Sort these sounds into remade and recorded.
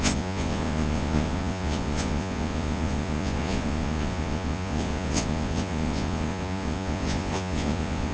remade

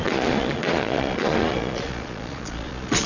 remade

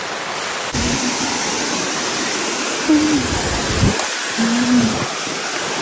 recorded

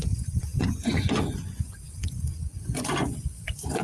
remade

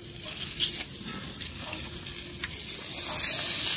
recorded